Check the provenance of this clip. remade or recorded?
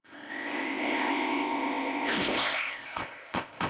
remade